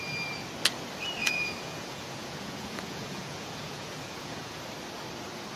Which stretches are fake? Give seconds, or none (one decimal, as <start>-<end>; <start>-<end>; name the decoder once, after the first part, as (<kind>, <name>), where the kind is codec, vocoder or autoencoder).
1.2-4.6 (vocoder, Vocos)